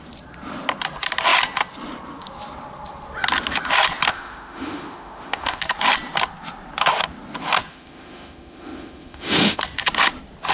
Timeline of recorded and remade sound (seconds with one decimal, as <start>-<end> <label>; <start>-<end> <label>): 0.0-4.1 recorded; 4.1-5.6 remade; 5.6-7.7 recorded; 7.7-9.6 remade; 9.6-10.5 recorded